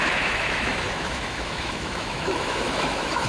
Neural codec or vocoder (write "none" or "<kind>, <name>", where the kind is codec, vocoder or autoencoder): autoencoder, DAC-VAE